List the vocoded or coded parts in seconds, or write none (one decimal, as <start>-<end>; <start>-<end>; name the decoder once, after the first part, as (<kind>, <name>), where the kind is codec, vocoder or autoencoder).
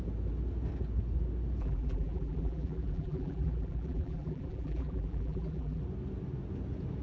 1.6-5.8 (vocoder, BigVGAN v2)